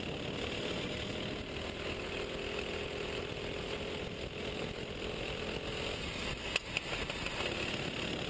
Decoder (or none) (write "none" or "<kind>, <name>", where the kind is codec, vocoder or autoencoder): none